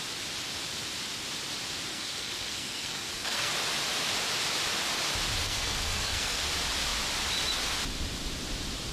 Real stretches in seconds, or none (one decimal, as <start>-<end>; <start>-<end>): 0.0-1.9; 3.5-5.4; 6.5-8.9